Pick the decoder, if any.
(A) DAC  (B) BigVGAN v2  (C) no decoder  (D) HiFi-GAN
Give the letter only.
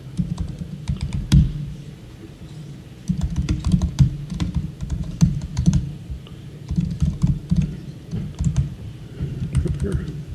B